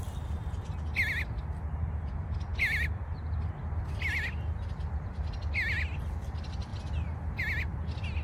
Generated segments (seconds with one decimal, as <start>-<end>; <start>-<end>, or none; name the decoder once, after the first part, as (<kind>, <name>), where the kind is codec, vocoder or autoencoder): none